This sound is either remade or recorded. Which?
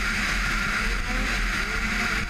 recorded